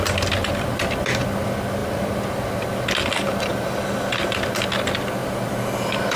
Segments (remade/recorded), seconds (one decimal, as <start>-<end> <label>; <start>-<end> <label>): 0.0-6.2 recorded